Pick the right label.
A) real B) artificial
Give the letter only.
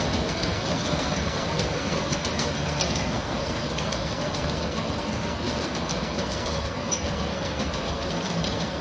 B